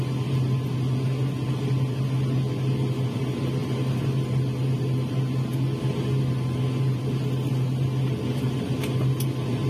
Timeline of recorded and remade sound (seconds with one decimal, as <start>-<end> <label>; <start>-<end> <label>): 0.0-9.7 recorded